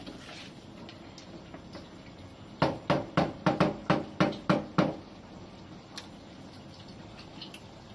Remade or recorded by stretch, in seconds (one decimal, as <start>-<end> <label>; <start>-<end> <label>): 0.0-7.9 recorded